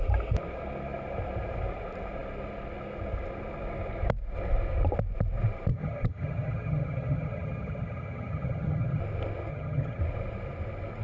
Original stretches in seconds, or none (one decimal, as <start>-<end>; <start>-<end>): 0.0-5.7; 9.0-9.5; 10.0-11.0